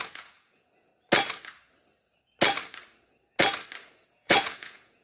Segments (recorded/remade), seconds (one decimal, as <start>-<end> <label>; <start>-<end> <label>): 0.0-0.9 remade; 0.9-3.9 recorded; 3.9-5.0 remade

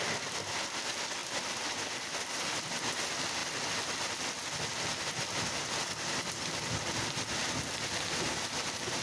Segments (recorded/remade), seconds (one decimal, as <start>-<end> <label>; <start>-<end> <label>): 0.0-9.0 recorded

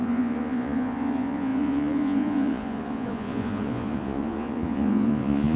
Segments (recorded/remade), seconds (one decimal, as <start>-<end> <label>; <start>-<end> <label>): 0.0-5.6 remade